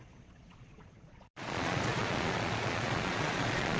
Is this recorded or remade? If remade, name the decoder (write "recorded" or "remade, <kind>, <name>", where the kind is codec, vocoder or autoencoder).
remade, vocoder, Vocos